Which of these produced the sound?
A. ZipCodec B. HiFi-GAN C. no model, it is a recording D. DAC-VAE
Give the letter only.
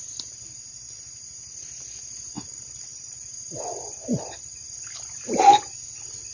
C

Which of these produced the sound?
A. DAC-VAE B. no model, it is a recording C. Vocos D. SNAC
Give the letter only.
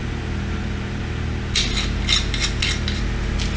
B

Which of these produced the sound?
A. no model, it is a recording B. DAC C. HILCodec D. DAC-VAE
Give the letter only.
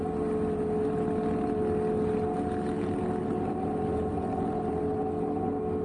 A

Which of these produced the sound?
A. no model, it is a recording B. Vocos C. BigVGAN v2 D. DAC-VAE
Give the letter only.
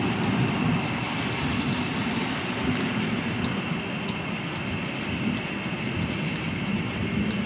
A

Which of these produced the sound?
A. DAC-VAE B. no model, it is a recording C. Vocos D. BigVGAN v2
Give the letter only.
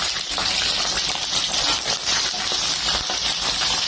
B